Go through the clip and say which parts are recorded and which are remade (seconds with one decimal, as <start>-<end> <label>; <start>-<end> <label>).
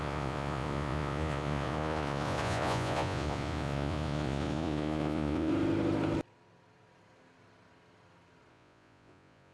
0.0-5.5 remade; 5.5-8.5 recorded; 8.5-9.5 remade